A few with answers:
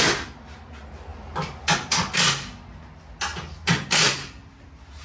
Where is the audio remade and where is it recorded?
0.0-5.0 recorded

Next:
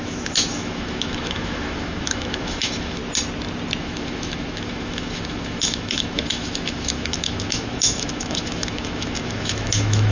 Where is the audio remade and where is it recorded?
0.0-3.0 remade; 3.0-3.8 recorded; 3.8-10.1 remade